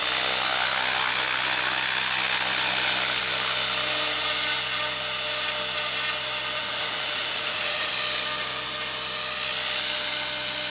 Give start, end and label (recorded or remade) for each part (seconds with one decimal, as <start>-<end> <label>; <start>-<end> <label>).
0.0-6.6 recorded; 6.6-7.9 remade; 7.9-10.7 recorded